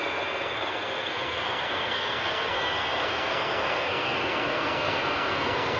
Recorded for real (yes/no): no